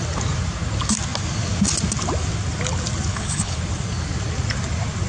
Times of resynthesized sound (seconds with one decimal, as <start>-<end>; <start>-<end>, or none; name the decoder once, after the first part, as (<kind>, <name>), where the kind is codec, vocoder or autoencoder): 3.1-3.6 (codec, HILCodec)